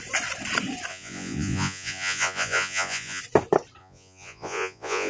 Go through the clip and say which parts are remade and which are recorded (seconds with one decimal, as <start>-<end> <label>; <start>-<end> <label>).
0.0-0.9 recorded; 0.9-3.2 remade; 3.2-3.8 recorded; 3.8-5.1 remade